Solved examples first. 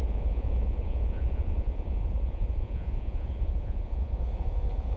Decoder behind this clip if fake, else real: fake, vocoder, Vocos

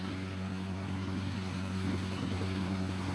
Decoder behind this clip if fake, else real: fake, codec, SNAC